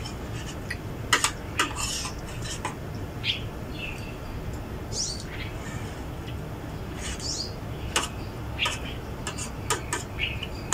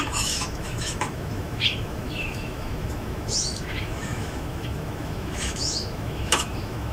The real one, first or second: first